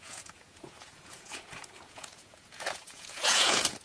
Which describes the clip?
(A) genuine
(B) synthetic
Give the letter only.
B